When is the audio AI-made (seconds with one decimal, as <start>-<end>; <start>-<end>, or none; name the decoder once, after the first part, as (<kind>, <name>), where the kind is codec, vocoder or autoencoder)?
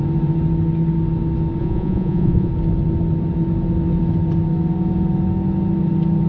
1.6-2.5 (vocoder, Vocos)